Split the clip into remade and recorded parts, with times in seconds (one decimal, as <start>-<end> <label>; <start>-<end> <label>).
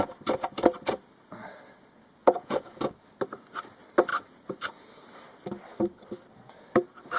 0.0-2.2 recorded; 2.2-2.8 remade; 2.8-7.2 recorded